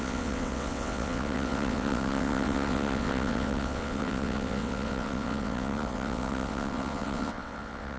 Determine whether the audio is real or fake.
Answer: fake